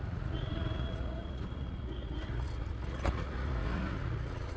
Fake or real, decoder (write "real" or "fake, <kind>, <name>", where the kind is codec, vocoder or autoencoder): fake, vocoder, Vocos